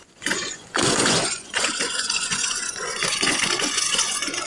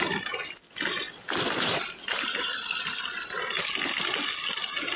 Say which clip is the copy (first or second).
first